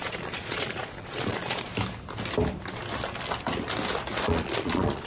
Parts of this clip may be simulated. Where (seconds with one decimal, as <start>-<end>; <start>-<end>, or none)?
0.0-1.7; 4.2-5.1